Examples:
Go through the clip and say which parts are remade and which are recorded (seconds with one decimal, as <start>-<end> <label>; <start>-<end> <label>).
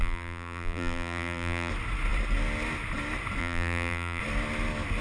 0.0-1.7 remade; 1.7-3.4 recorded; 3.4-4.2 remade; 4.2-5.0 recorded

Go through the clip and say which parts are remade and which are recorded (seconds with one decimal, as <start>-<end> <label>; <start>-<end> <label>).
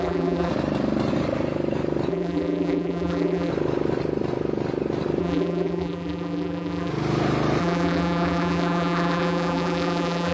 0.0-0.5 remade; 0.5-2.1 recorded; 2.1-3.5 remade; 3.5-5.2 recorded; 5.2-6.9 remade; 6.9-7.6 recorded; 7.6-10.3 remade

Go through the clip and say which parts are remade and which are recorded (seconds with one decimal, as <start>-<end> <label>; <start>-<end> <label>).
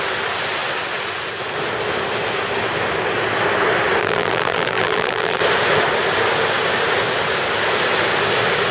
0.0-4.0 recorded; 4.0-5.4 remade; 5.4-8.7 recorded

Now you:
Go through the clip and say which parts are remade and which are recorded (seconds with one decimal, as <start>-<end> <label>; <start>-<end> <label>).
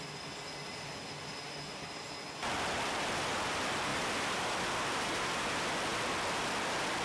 0.0-3.9 recorded; 3.9-5.0 remade; 5.0-7.0 recorded